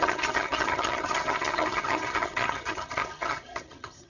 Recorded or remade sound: remade